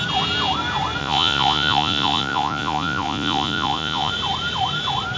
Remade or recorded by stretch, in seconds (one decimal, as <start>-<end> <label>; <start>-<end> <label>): 0.0-1.0 recorded; 1.0-4.1 remade; 4.1-5.2 recorded